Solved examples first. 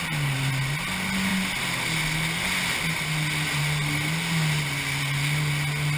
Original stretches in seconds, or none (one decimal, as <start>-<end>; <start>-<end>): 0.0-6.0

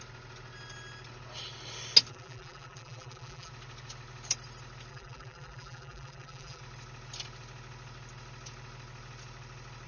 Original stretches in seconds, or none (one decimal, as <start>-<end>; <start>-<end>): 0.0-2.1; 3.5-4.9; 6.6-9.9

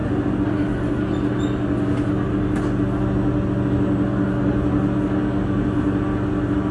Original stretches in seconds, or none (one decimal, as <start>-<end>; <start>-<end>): 0.0-6.7